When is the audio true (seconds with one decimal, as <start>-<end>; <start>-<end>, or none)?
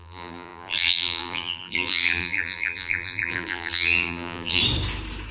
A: 4.6-5.3